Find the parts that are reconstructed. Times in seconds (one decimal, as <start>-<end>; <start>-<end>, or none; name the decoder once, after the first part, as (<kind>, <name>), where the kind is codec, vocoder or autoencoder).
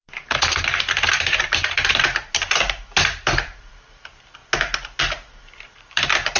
0.0-4.4 (vocoder, BigVGAN v2); 5.4-6.4